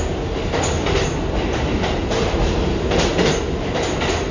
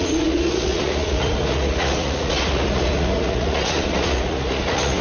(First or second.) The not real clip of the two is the second